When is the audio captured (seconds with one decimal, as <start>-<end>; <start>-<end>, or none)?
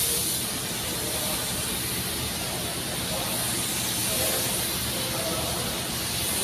0.0-6.4